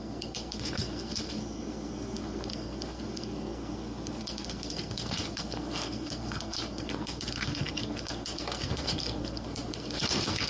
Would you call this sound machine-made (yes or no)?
yes